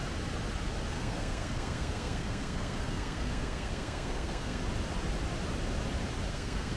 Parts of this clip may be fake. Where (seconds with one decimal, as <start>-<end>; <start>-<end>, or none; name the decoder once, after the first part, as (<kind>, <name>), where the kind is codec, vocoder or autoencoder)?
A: 0.9-4.6 (codec, SNAC); 6.3-6.8